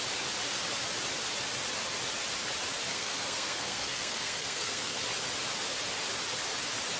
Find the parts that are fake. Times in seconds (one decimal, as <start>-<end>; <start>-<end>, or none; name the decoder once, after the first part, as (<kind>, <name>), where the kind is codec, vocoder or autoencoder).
2.9-5.0 (codec, SNAC)